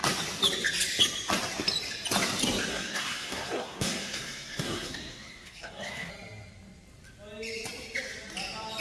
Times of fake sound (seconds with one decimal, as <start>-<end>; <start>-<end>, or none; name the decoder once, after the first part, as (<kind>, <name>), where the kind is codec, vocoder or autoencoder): 2.7-6.1 (codec, SNAC)

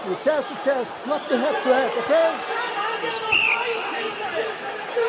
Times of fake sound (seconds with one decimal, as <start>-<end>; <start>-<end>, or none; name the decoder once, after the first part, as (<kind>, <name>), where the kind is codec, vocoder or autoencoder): none